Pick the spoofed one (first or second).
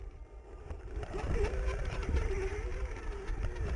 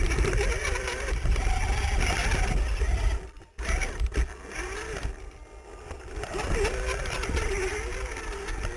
first